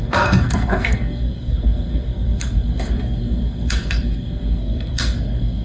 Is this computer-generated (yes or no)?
yes